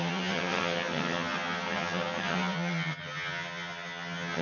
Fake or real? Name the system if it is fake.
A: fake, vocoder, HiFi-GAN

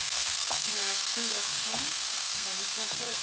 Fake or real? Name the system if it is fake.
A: fake, codec, SNAC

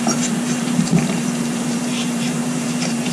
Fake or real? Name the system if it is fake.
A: fake, vocoder, BigVGAN v2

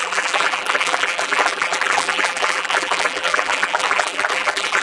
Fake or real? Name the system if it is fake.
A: fake, vocoder, BigVGAN v2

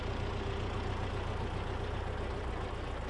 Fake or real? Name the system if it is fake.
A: real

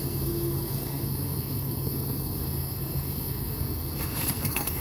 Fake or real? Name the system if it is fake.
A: fake, codec, SNAC